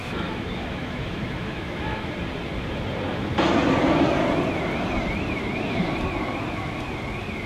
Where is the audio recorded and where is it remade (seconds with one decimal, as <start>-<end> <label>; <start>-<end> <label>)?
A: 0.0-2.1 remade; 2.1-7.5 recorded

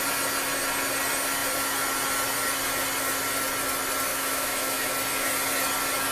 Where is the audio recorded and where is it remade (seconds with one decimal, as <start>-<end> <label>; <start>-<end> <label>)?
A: 0.0-4.1 recorded; 4.1-4.9 remade; 4.9-6.1 recorded

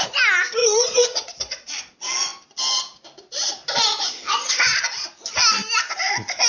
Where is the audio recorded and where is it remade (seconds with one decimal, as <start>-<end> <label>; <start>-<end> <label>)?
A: 0.0-0.6 recorded; 0.6-1.8 remade; 1.8-6.5 recorded